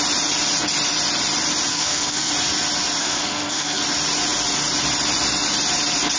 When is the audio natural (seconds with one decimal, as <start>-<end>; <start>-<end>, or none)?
0.0-1.7; 2.3-3.0; 3.8-6.2